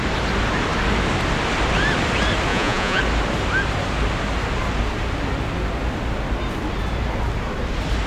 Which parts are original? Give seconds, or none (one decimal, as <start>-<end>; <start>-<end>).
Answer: 0.0-2.5; 3.0-8.1